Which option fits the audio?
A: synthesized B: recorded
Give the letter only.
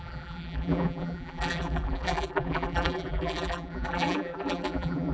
A